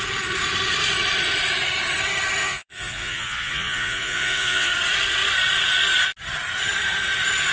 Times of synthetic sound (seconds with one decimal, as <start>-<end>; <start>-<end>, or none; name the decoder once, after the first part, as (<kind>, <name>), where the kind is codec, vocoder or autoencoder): 2.4-4.7 (vocoder, Vocos)